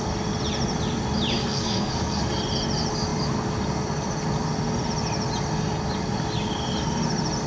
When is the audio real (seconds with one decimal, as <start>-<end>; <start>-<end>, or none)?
0.0-1.4; 2.4-7.5